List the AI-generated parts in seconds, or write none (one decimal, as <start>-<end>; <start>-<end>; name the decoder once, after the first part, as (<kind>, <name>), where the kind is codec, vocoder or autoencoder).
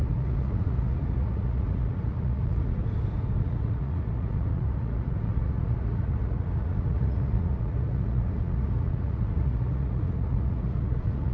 0.0-2.8 (vocoder, Vocos); 3.4-11.3